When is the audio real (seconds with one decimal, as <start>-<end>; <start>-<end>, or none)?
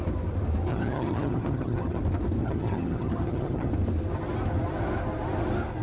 0.0-0.7; 2.0-2.4; 3.7-5.8